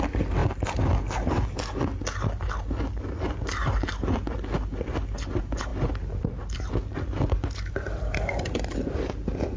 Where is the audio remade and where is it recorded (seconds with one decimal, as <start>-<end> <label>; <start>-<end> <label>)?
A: 0.0-9.6 recorded